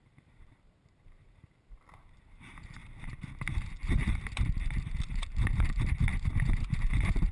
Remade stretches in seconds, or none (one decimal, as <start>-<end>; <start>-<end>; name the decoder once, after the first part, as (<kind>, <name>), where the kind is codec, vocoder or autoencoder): 0.0-7.3 (vocoder, BigVGAN v2)